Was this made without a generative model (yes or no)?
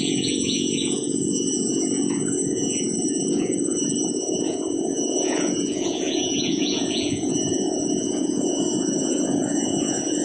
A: no